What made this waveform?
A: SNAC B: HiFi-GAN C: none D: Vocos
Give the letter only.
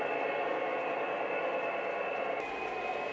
C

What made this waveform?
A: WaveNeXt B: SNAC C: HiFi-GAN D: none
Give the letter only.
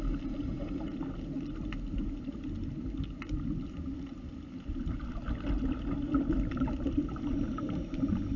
D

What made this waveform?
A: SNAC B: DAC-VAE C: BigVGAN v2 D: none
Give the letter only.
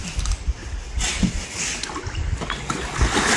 D